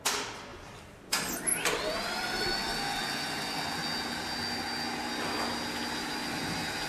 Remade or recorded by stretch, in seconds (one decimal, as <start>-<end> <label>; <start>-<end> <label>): 0.0-6.9 recorded